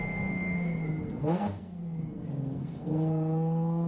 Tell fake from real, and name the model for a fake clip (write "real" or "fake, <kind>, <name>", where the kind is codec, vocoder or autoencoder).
fake, codec, SNAC